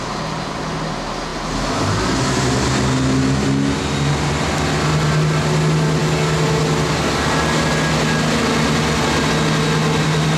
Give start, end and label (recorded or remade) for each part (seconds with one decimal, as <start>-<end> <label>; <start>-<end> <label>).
0.0-10.4 recorded